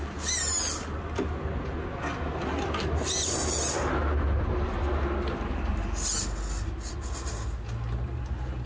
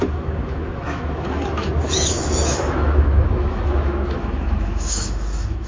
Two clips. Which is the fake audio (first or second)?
second